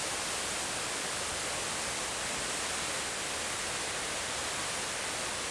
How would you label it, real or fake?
real